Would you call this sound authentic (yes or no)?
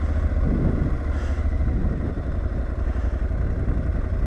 yes